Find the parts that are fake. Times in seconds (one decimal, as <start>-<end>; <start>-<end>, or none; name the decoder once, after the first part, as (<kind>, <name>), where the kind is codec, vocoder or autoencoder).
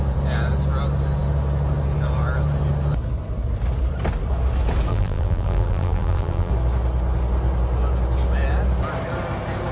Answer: 4.9-6.5 (vocoder, BigVGAN v2)